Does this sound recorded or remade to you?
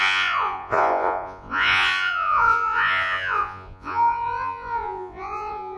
remade